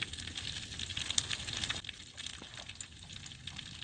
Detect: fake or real real